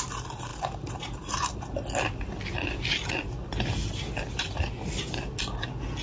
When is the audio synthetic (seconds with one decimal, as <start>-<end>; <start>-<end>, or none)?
0.5-1.6